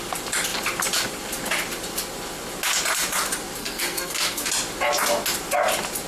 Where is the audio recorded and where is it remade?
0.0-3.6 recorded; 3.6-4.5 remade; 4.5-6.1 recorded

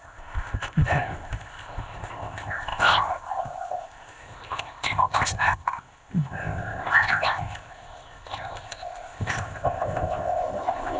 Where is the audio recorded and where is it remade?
0.0-11.0 remade

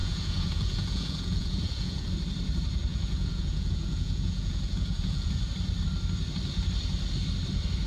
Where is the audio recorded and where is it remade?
0.0-2.1 remade; 2.1-2.9 recorded; 2.9-5.4 remade; 5.4-7.9 recorded

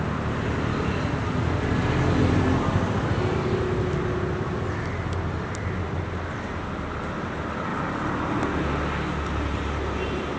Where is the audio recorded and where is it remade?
0.0-10.4 recorded

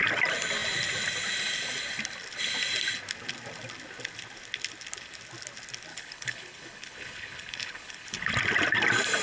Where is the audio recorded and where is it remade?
0.0-5.9 recorded; 5.9-8.3 remade; 8.3-9.2 recorded

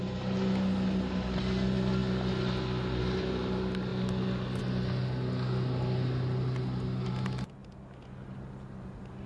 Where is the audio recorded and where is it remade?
0.0-9.3 recorded